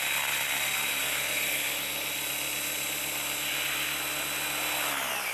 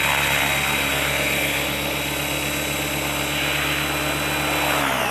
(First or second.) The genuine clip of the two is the second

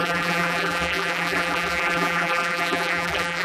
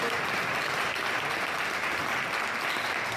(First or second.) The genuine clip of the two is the second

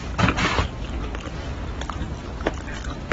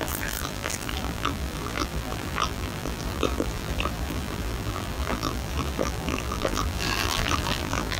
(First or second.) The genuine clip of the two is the first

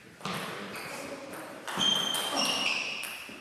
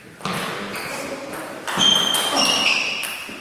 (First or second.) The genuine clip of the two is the second